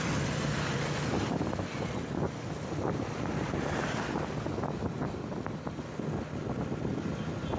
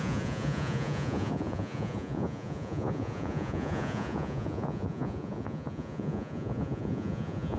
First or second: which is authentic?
first